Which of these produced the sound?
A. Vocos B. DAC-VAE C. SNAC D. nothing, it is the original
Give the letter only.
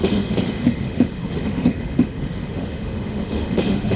B